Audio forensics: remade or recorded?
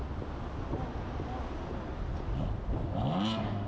recorded